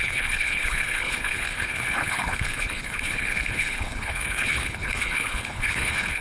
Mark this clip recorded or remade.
remade